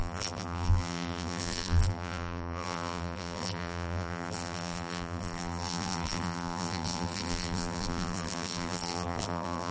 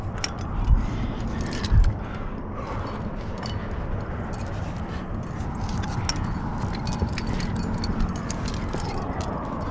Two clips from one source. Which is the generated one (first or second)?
first